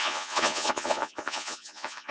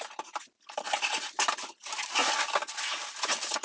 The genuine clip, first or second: second